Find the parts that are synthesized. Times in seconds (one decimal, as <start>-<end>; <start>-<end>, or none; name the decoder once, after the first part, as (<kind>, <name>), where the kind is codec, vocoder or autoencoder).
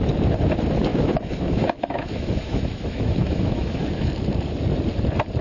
0.9-4.1 (autoencoder, DAC-VAE)